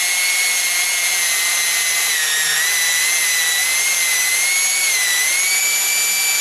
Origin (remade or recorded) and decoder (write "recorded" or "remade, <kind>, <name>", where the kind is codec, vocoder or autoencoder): recorded